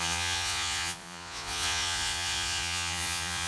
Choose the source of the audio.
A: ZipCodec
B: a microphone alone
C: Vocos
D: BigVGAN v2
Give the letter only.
C